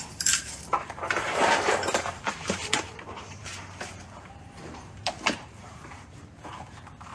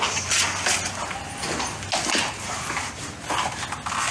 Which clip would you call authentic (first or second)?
second